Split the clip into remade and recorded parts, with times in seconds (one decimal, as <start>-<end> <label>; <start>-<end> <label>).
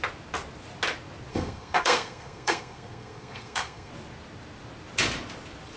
0.0-1.3 recorded; 1.3-3.9 remade; 3.9-5.8 recorded